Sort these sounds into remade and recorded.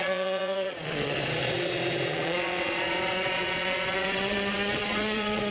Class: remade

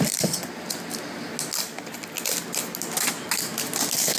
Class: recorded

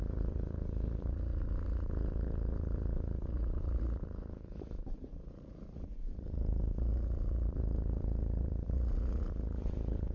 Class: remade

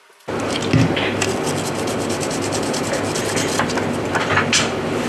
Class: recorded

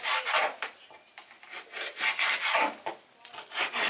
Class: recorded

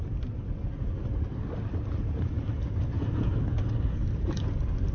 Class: recorded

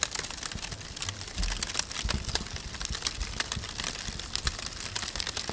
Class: recorded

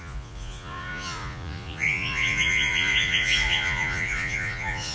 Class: remade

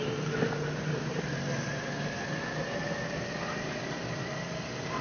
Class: recorded